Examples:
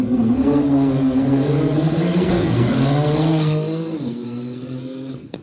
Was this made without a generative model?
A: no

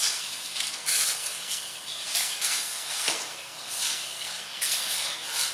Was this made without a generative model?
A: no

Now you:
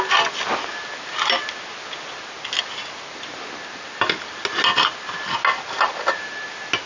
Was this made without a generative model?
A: yes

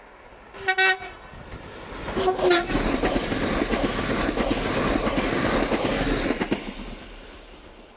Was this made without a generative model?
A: yes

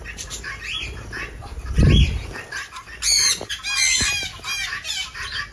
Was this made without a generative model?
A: yes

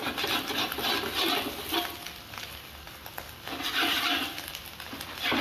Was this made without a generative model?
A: yes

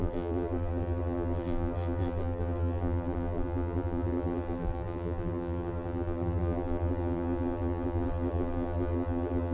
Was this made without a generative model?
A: no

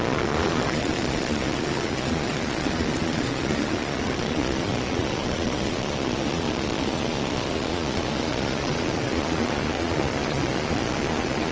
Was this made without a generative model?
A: no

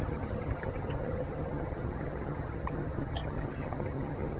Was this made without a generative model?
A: no